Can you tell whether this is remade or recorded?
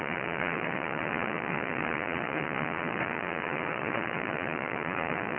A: remade